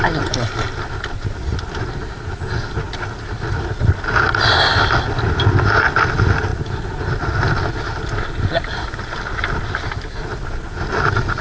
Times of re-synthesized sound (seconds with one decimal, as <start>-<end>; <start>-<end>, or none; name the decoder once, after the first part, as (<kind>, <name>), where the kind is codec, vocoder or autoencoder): none